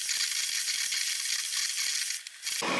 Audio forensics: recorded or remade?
recorded